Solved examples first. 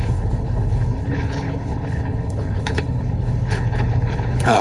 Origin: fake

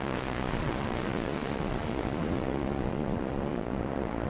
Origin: fake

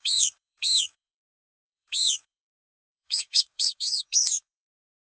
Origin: fake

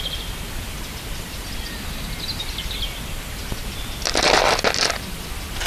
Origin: real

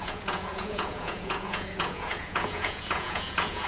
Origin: fake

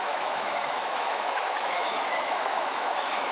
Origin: fake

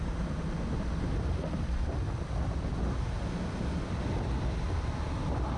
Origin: real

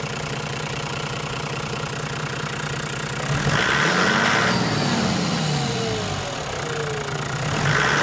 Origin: real